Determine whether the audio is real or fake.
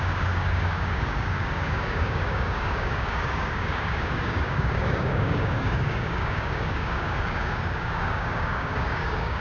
fake